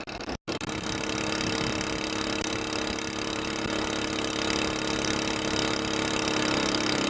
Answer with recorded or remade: recorded